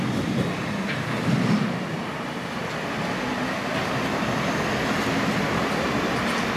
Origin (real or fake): real